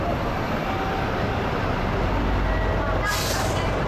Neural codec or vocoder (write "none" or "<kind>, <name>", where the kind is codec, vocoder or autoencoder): none